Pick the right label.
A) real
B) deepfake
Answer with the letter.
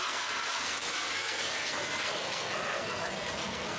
B